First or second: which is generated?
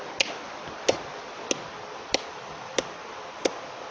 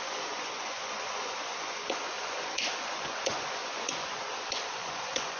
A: second